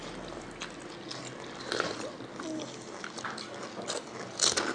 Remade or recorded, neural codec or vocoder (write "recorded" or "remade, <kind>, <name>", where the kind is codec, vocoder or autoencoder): recorded